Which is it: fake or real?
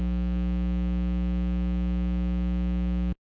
real